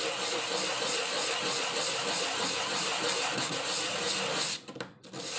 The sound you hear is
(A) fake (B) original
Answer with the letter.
B